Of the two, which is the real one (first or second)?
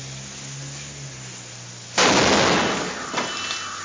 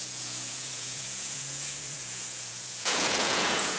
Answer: first